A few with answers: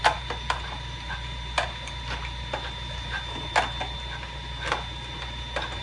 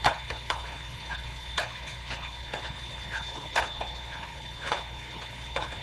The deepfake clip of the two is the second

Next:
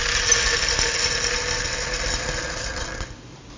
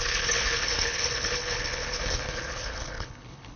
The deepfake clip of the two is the second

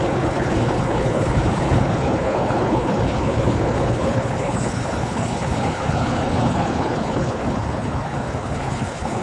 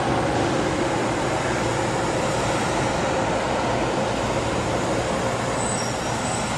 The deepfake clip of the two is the first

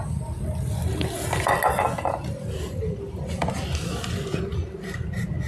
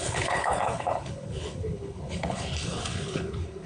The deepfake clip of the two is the second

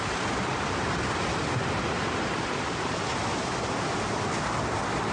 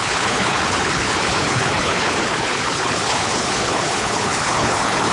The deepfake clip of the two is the second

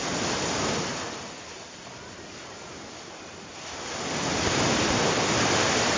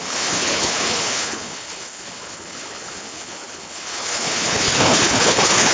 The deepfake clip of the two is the second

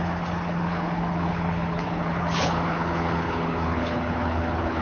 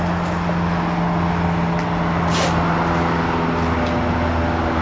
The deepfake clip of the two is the first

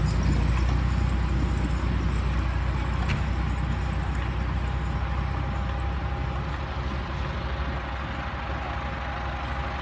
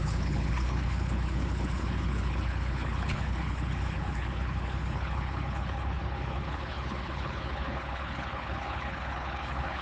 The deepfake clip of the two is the second